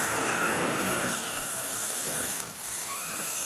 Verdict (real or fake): fake